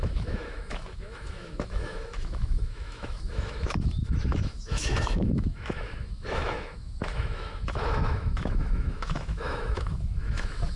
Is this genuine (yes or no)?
no